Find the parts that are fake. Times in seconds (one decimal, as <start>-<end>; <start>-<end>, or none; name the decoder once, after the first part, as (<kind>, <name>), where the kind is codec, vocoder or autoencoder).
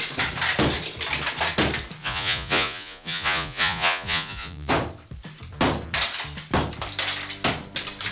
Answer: 2.0-4.7 (vocoder, Vocos)